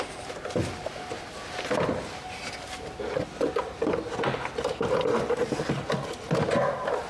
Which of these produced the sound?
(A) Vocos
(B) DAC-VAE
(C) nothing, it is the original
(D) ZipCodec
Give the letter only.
C